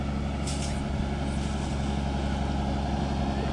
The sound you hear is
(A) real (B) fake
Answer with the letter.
A